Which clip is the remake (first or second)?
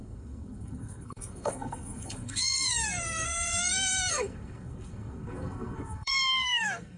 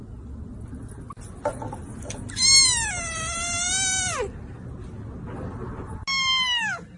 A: first